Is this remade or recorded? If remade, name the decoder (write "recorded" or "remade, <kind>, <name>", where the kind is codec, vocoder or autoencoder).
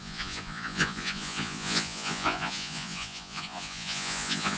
remade, vocoder, Vocos